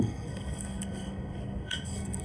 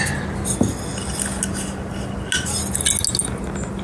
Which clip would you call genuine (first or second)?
second